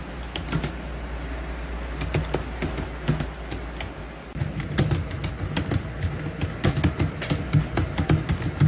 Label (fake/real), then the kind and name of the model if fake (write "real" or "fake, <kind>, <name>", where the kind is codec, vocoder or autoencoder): real